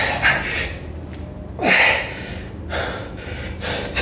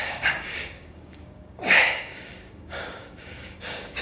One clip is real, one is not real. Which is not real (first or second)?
second